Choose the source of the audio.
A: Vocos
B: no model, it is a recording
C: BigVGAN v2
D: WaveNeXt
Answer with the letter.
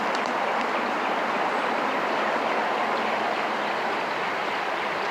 B